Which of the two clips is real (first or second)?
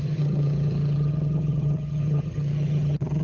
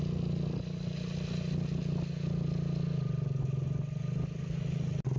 second